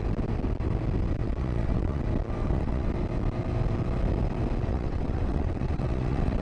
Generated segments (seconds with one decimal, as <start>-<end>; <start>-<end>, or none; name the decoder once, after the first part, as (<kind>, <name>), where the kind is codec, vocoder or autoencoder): 1.2-2.0 (vocoder, WaveNeXt); 2.4-2.9; 4.6-6.4